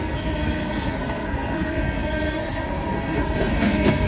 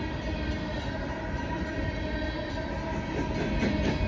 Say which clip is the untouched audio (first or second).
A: second